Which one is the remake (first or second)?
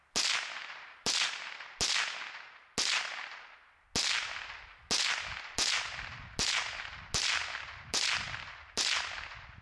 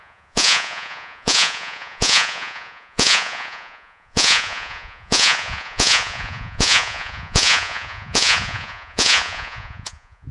second